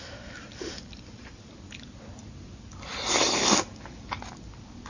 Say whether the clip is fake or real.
real